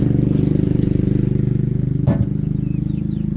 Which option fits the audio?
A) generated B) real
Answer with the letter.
B